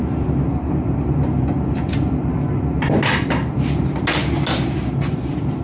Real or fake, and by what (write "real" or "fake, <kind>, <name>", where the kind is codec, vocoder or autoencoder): real